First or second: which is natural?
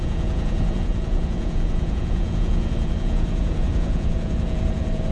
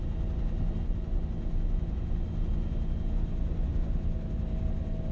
second